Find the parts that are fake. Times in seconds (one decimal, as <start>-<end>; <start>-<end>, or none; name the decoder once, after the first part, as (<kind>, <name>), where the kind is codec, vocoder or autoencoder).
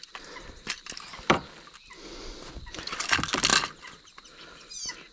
1.1-2.5 (vocoder, BigVGAN v2)